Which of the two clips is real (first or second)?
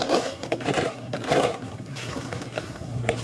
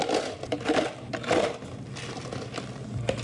second